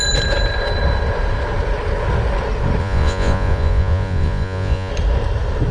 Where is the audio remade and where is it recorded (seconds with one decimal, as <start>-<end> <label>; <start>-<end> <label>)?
0.0-2.8 recorded; 2.8-4.9 remade; 4.9-5.7 recorded